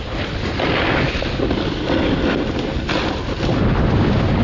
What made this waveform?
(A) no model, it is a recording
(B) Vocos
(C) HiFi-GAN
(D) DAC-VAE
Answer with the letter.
A